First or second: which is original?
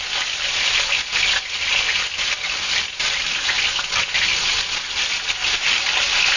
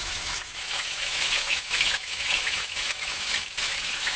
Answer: first